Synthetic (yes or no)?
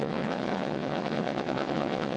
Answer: yes